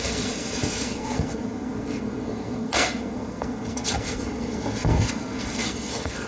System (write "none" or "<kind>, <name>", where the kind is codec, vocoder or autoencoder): codec, SNAC